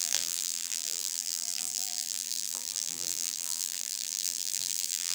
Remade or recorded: remade